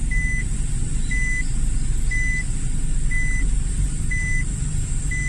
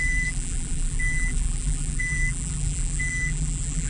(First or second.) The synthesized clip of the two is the second